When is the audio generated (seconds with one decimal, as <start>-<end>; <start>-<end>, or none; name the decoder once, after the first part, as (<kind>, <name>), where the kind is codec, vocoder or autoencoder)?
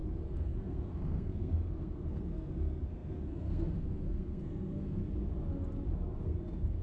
0.0-5.0 (codec, SNAC); 6.2-6.8